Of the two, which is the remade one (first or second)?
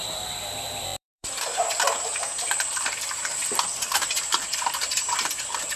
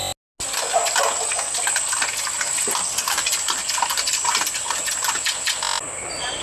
first